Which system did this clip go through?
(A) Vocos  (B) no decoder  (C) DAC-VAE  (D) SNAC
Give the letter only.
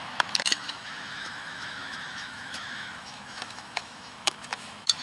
C